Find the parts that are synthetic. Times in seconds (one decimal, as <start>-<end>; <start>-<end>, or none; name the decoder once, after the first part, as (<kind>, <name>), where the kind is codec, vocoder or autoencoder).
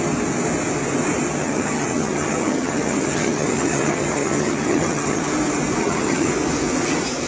1.4-5.3 (vocoder, HiFi-GAN); 5.8-6.3